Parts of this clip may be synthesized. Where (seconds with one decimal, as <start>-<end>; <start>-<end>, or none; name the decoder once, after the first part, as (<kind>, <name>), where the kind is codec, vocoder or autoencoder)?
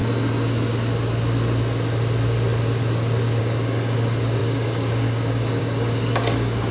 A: 3.4-6.7 (codec, DAC)